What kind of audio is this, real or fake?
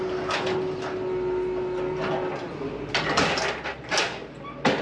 real